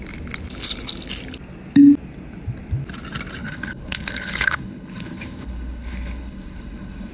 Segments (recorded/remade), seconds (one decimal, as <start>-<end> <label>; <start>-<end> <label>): 0.0-3.4 recorded; 3.4-7.1 remade